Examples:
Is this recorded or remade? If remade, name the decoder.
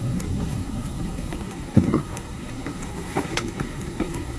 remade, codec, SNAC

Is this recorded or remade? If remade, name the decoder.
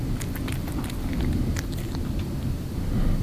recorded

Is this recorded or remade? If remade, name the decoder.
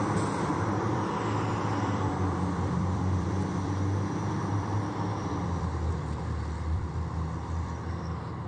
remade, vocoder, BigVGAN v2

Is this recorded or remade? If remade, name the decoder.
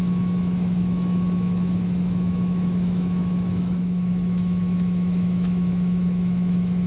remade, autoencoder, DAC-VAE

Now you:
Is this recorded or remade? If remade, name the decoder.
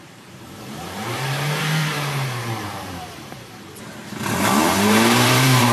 remade, vocoder, BigVGAN v2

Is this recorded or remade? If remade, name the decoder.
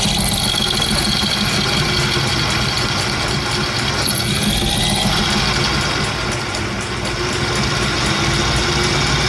recorded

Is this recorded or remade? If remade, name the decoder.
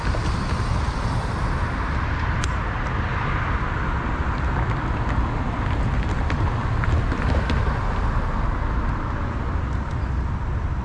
recorded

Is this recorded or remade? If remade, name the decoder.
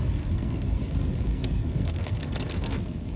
remade, codec, SNAC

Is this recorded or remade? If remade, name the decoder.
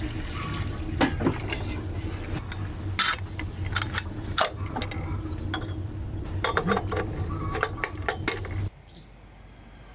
recorded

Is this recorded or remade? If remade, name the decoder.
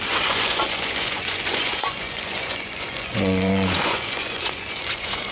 remade, vocoder, Vocos